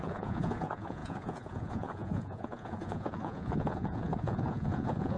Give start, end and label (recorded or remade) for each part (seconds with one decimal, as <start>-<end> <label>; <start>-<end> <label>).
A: 0.0-5.2 remade